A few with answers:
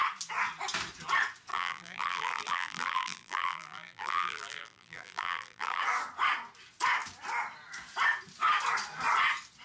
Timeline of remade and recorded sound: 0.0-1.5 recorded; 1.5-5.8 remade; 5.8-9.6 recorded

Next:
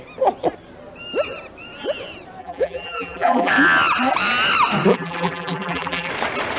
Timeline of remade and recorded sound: 0.0-2.4 recorded; 2.4-3.5 remade; 3.5-4.9 recorded; 4.9-6.1 remade; 6.1-6.6 recorded

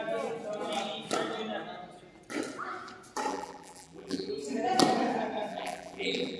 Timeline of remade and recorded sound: 0.0-3.3 recorded; 3.3-4.3 remade; 4.3-5.5 recorded; 5.5-6.4 remade

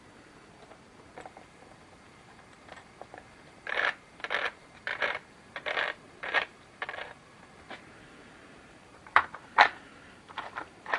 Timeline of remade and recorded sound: 0.0-11.0 remade

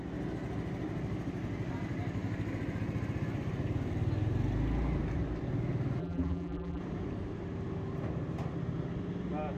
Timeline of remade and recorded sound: 0.0-6.0 recorded; 6.0-6.8 remade; 6.8-9.6 recorded

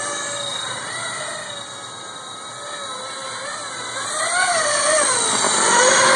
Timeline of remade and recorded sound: 0.0-0.5 recorded; 0.5-1.5 remade; 1.5-6.2 recorded

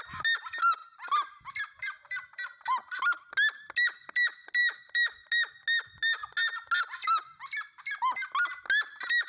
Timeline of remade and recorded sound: 0.0-9.3 recorded